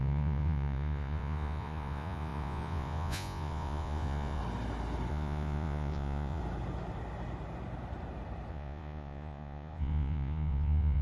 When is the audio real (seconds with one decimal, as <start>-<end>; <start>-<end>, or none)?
4.4-5.1; 6.4-8.5